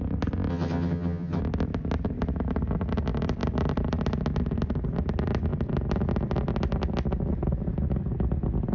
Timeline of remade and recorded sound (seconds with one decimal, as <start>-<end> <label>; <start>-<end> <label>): 0.0-0.5 recorded; 0.5-1.4 remade; 1.4-8.7 recorded